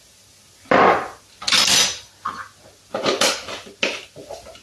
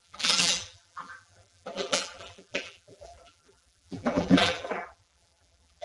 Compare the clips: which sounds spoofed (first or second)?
second